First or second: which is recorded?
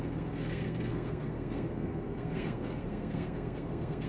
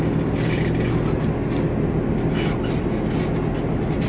second